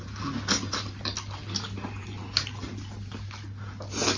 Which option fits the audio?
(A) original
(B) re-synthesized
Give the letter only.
A